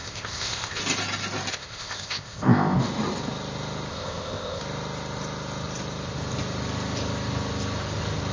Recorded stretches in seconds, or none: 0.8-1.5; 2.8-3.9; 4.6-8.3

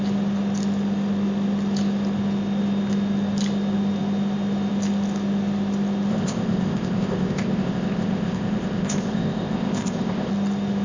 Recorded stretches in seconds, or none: 0.0-6.1; 10.3-10.8

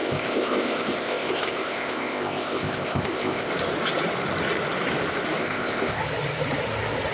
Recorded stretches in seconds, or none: 3.5-5.4; 6.0-7.1